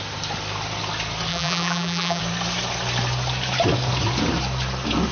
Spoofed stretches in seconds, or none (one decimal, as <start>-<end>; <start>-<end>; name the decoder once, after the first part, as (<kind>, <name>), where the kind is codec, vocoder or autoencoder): 1.3-2.2 (vocoder, BigVGAN v2)